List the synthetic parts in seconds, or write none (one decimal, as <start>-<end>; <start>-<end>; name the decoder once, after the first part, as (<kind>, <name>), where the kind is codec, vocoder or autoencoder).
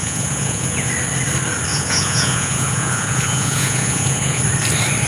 0.0-0.9 (vocoder, Vocos); 1.7-4.4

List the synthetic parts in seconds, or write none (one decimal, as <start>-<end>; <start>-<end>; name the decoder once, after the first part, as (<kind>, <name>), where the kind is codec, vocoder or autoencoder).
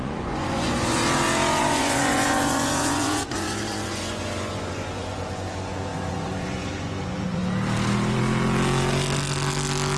0.0-1.0 (vocoder, Vocos); 1.6-7.4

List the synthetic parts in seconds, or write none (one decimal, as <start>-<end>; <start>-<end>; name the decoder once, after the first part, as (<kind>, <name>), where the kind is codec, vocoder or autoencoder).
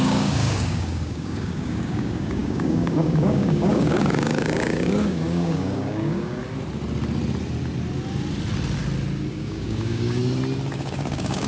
0.0-6.4 (codec, DAC); 9.3-10.2; 10.7-11.5